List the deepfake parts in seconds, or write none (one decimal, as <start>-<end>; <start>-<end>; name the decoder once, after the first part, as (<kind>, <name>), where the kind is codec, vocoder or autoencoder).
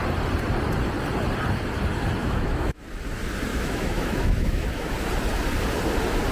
2.2-2.8 (autoencoder, DAC-VAE); 3.5-4.9